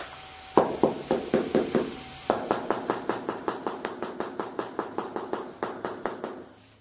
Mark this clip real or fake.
real